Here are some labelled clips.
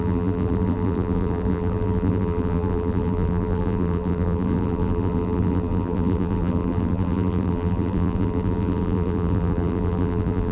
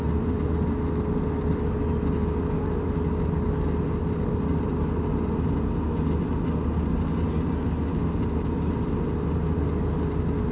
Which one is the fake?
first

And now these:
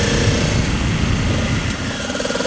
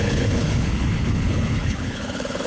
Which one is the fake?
second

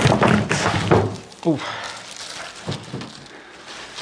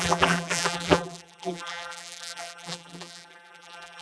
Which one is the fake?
second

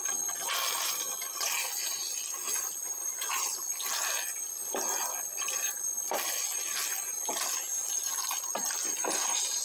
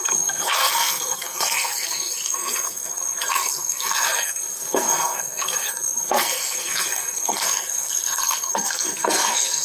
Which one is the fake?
second